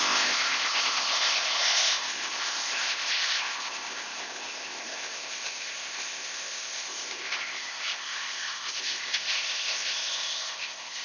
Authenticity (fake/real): fake